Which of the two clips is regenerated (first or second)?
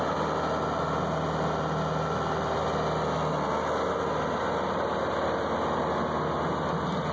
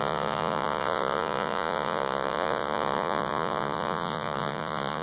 second